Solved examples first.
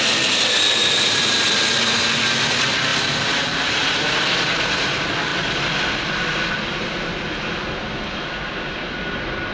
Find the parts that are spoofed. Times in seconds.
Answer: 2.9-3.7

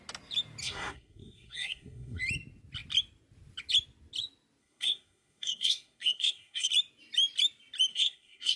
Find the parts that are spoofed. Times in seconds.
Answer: 0.6-2.2; 4.6-6.7; 7.9-8.6